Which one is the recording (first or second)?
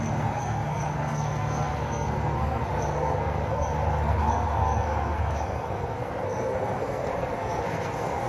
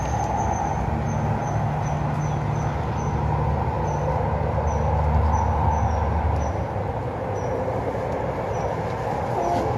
second